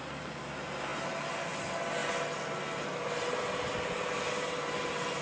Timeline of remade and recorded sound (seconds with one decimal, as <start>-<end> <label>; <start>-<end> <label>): 0.0-5.2 recorded